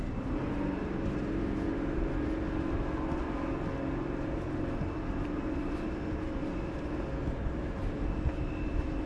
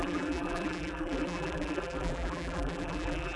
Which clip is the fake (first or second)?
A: second